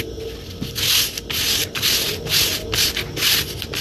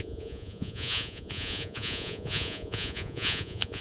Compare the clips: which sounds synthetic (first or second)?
second